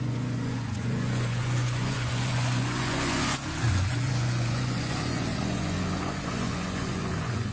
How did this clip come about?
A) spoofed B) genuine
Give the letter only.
A